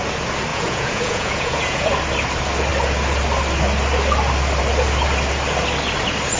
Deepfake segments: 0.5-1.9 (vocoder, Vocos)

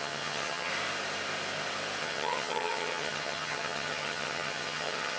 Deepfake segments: 0.0-0.7 (vocoder, HiFi-GAN); 2.0-5.2

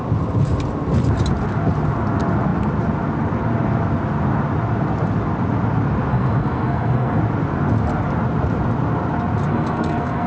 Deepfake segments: 6.1-7.2 (codec, SNAC); 9.5-10.3